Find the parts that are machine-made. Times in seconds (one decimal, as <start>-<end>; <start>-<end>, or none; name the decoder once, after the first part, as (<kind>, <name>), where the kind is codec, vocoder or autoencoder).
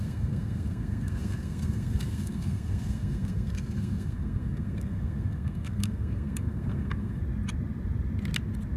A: 0.0-7.2 (codec, SNAC)